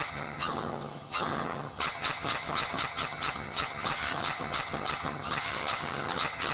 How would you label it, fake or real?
fake